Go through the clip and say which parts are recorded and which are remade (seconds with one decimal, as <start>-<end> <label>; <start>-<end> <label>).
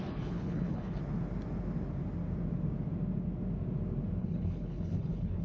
0.0-1.0 remade; 1.0-4.2 recorded; 4.2-5.4 remade